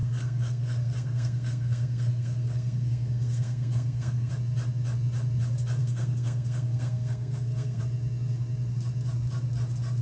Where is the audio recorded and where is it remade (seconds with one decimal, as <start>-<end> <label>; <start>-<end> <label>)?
0.0-4.3 remade; 4.3-5.8 recorded; 5.8-7.8 remade; 7.8-10.0 recorded